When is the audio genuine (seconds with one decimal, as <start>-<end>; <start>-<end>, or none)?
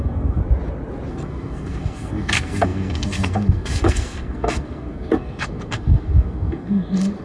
0.4-1.1